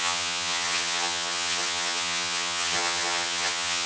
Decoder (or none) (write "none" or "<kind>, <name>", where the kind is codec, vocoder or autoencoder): vocoder, HiFi-GAN